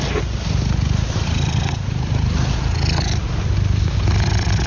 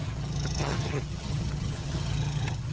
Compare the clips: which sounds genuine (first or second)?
first